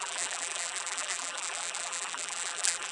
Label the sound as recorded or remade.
remade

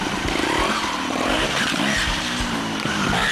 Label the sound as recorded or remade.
remade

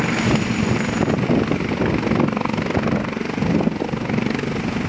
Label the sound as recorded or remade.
recorded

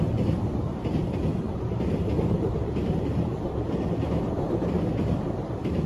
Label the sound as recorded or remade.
remade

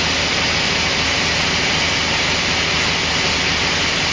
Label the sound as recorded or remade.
recorded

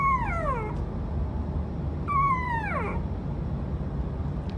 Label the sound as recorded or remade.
recorded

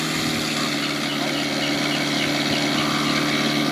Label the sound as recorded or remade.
recorded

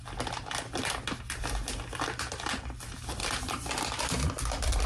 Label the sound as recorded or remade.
recorded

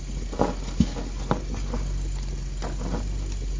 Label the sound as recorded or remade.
recorded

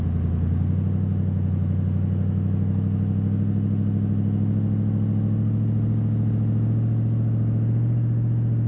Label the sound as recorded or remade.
recorded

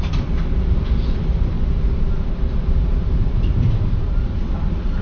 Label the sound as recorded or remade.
remade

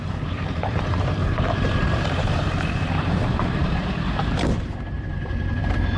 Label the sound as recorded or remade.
remade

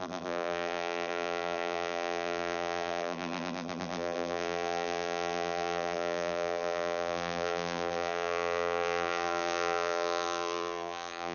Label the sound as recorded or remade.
remade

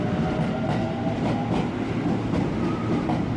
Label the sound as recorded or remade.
recorded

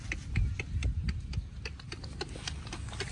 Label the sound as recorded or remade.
recorded